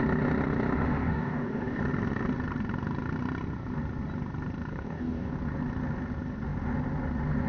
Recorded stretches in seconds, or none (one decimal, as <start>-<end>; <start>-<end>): 0.0-1.0; 1.8-4.7; 5.3-7.5

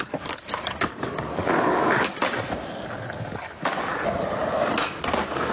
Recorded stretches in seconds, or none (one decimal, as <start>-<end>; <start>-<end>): 2.2-3.2; 3.9-5.0

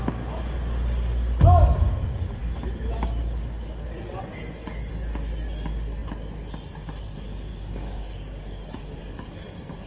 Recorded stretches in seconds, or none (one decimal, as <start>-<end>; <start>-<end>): 0.0-7.5; 9.0-9.9

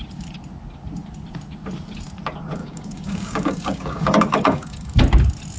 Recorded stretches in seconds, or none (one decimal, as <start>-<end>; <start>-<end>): 0.0-2.6; 5.0-5.6

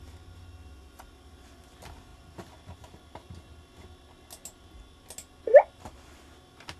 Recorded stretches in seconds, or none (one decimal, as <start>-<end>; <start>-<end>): 0.0-6.8

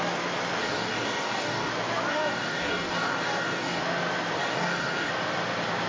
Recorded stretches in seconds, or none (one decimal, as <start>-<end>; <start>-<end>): 0.0-0.6; 1.7-2.1; 3.8-4.4; 5.1-5.9

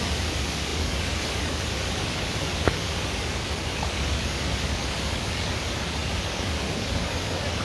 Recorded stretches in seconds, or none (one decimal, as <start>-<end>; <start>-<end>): none

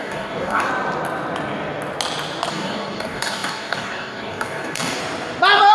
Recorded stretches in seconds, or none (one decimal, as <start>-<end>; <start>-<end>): 0.7-2.5; 5.0-5.7